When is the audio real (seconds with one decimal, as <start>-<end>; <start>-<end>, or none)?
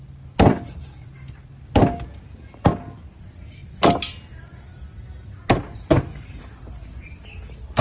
0.0-7.8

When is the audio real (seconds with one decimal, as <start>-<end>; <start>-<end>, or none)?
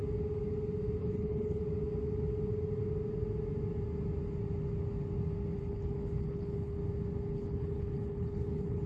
0.0-1.0; 1.6-5.6; 6.8-7.3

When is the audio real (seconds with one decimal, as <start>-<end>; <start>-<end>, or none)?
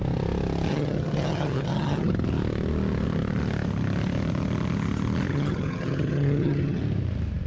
0.0-0.7; 2.1-5.3; 6.8-7.5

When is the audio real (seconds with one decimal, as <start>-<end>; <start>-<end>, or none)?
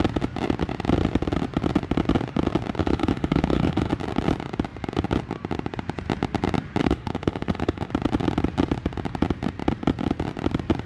0.0-2.8; 3.9-6.8; 7.9-10.9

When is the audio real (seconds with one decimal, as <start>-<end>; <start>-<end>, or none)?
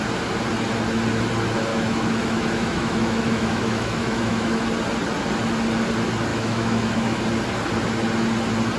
0.0-1.7; 4.6-6.3; 7.2-8.8